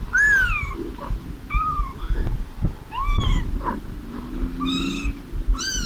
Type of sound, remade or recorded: recorded